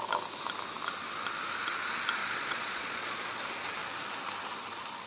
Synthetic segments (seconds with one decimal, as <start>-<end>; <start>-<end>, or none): 2.2-3.4